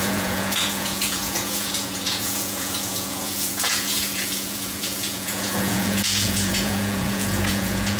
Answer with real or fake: fake